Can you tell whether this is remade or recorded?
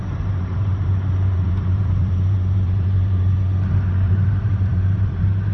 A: remade